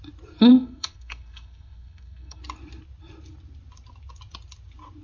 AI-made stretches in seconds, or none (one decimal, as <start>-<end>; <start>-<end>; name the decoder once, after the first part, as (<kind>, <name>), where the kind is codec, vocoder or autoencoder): 0.5-2.4 (codec, SNAC)

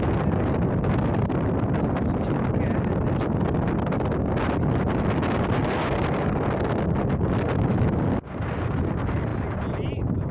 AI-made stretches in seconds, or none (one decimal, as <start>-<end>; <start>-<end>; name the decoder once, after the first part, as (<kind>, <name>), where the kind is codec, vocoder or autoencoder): none